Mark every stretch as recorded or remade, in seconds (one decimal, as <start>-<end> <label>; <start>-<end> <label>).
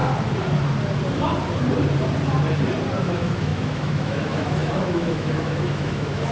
0.0-3.0 recorded; 3.0-6.3 remade